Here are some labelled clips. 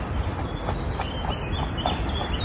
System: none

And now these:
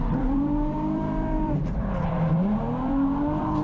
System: vocoder, BigVGAN v2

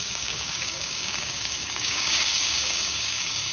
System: codec, DAC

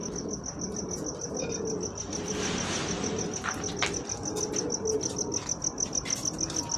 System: none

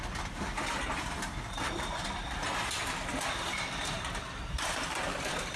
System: vocoder, BigVGAN v2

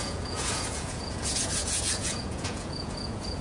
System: vocoder, Vocos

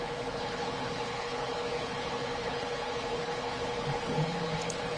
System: codec, HILCodec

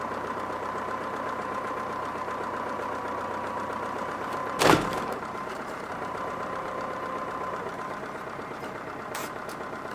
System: vocoder, BigVGAN v2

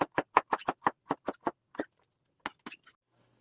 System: none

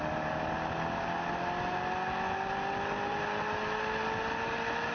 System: none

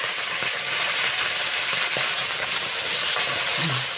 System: vocoder, BigVGAN v2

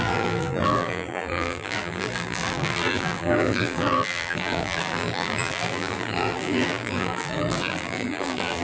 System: vocoder, BigVGAN v2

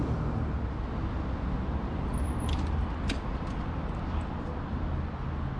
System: none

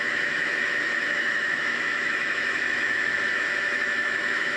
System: autoencoder, DAC-VAE